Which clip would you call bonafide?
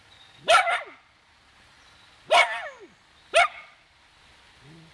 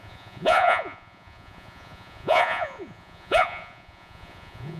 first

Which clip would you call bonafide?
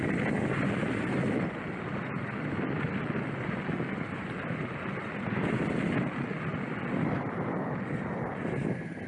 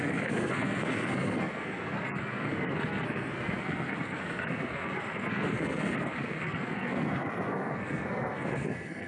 first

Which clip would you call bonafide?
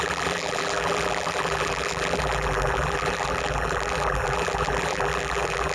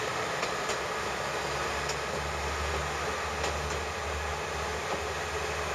second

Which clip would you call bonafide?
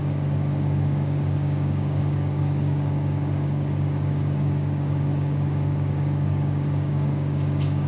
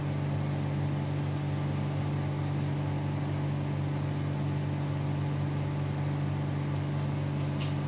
second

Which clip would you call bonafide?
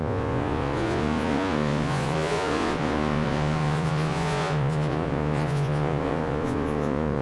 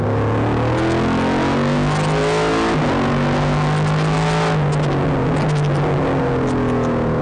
second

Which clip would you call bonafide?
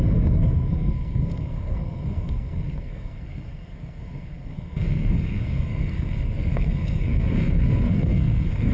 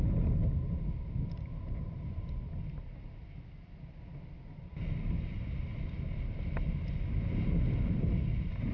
second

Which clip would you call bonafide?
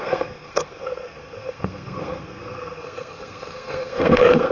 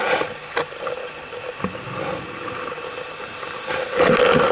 second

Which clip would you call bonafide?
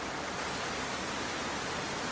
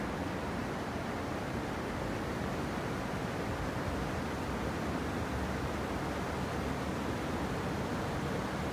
first